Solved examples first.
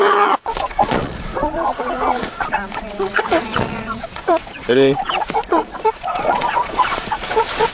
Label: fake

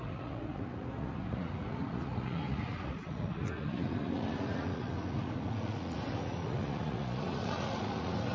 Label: fake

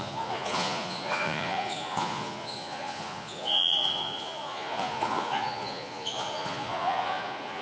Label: fake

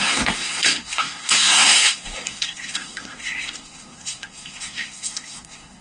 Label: fake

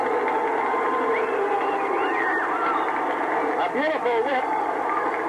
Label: real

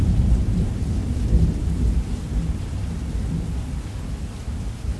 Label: real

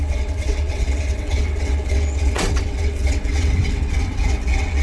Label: fake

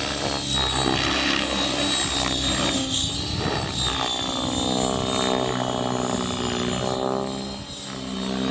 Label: real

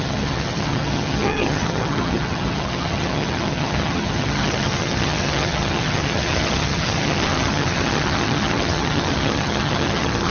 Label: fake